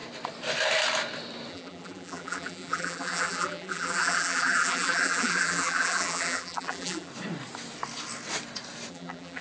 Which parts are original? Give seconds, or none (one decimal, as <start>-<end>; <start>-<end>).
0.0-1.5; 7.1-8.9